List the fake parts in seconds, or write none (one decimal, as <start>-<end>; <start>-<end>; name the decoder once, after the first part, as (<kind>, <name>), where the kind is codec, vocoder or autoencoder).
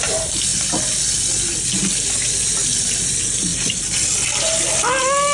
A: 3.5-4.1 (vocoder, BigVGAN v2)